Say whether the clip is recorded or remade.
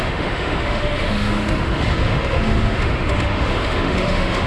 remade